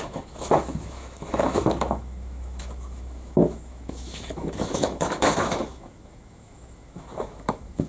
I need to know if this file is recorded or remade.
remade